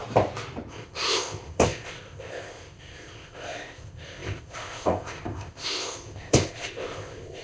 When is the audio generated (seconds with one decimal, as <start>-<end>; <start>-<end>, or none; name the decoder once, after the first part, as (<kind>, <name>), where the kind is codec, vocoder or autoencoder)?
0.7-7.4 (codec, ZipCodec)